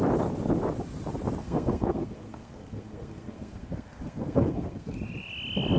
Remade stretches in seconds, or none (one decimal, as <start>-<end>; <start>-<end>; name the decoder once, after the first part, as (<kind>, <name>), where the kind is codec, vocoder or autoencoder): 1.4-4.9 (codec, SNAC)